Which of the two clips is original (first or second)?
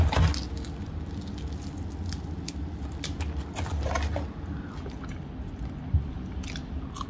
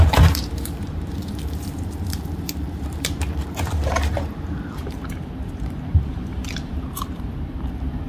first